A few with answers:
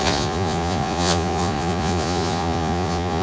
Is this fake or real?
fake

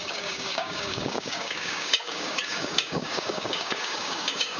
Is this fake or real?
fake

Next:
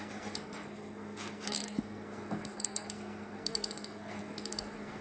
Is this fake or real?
fake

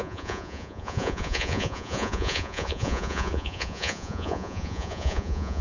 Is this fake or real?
fake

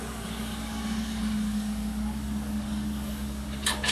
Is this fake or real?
fake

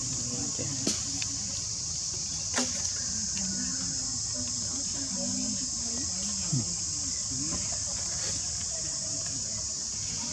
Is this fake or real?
real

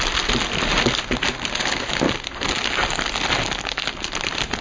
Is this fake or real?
real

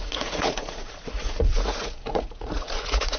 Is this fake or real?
fake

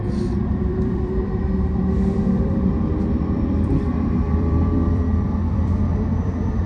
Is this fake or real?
fake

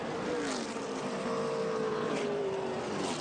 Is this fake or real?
fake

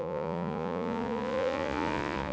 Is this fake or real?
fake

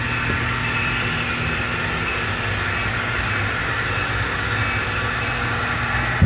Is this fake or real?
real